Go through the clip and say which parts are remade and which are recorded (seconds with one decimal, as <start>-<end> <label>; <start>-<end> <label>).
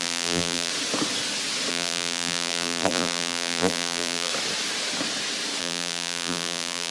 0.0-0.7 remade; 0.7-1.7 recorded; 1.7-4.3 remade; 4.3-5.6 recorded; 5.6-6.9 remade